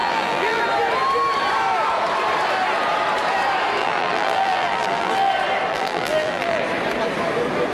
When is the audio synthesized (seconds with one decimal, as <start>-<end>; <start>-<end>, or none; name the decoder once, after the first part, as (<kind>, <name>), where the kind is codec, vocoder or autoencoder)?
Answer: 0.0-0.6 (vocoder, BigVGAN v2); 3.8-5.3; 5.7-6.6